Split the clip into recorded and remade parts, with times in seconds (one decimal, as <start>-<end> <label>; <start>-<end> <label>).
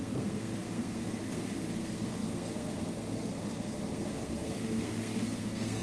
0.0-5.8 remade